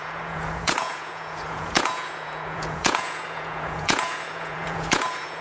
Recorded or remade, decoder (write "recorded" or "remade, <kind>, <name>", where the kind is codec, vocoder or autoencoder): remade, vocoder, Vocos